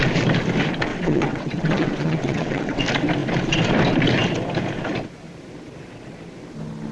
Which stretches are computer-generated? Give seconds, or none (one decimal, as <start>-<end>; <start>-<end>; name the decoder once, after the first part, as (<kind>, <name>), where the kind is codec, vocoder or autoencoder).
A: 0.9-2.8 (vocoder, WaveNeXt)